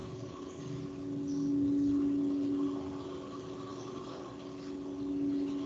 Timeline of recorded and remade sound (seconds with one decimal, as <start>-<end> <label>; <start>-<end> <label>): 0.0-0.6 remade; 0.6-5.7 recorded